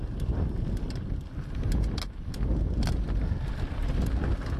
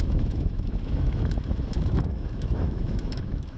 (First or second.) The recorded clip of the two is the first